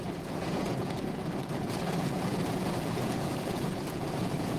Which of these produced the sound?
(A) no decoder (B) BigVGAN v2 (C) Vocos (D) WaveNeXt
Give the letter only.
C